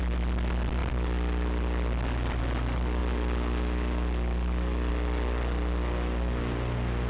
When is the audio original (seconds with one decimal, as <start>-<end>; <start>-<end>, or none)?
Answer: 0.0-7.1